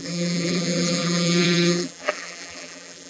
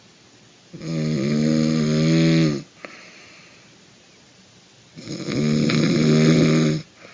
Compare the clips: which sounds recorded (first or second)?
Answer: second